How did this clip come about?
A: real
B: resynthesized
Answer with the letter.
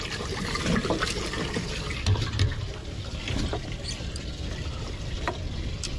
B